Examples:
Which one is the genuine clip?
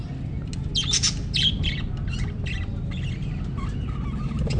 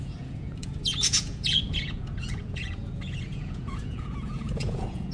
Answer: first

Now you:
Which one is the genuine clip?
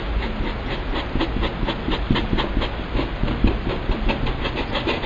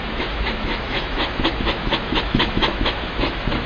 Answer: first